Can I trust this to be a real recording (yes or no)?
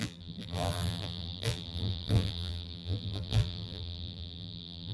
no